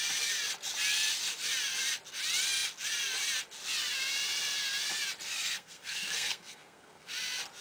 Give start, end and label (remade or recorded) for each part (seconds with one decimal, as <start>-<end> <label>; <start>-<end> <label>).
0.0-5.4 recorded; 5.4-7.1 remade; 7.1-7.6 recorded